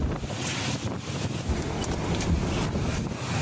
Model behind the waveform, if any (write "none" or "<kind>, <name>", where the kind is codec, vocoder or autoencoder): none